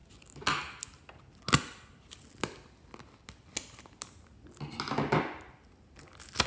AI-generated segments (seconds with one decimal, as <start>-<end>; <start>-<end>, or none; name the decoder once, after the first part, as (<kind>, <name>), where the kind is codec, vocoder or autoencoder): none